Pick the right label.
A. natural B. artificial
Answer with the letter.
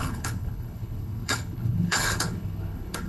B